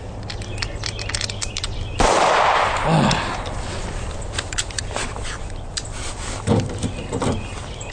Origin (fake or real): real